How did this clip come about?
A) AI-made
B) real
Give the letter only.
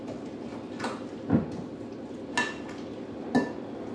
B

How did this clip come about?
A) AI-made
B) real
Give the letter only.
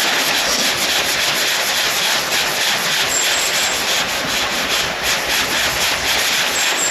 B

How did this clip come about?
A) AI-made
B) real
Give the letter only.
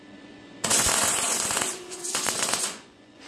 A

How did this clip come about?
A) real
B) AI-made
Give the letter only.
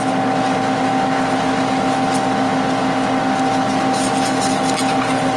A